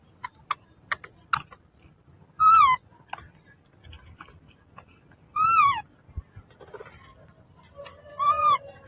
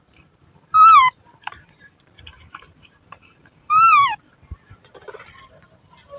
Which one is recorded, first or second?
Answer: first